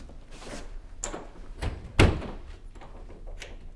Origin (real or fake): real